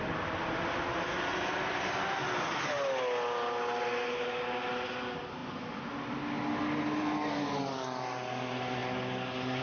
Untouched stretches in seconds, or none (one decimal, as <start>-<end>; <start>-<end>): 0.0-9.6